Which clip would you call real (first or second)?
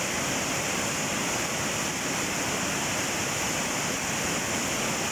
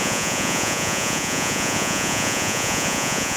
first